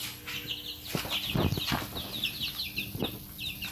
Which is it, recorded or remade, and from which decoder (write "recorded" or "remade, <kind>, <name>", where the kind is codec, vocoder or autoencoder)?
recorded